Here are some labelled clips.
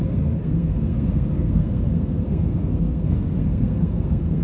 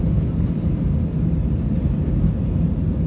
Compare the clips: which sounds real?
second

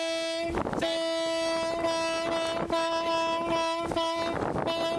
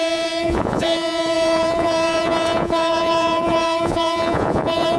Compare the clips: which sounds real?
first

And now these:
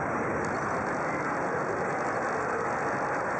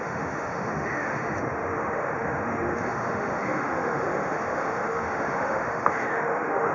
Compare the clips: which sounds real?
first